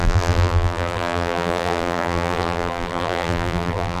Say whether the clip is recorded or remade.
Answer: remade